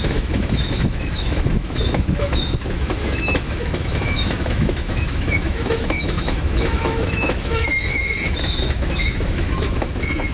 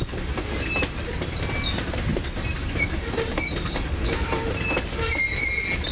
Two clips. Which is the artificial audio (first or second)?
first